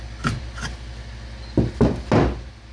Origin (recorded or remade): recorded